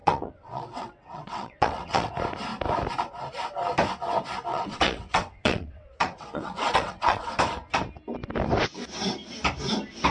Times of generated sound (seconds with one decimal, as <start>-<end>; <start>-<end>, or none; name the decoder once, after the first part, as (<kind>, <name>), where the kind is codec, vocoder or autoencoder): 0.0-2.1 (vocoder, WaveNeXt); 4.5-7.3